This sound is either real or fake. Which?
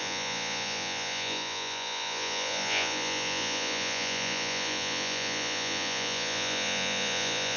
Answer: fake